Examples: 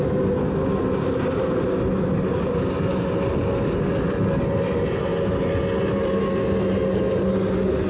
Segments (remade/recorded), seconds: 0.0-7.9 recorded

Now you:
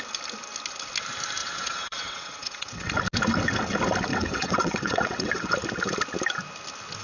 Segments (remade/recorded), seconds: 0.0-1.4 recorded; 1.4-2.9 remade; 2.9-4.1 recorded; 4.1-5.5 remade; 5.5-7.0 recorded

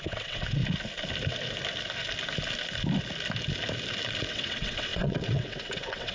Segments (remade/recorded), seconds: 0.0-0.6 remade; 0.6-4.3 recorded; 4.3-6.1 remade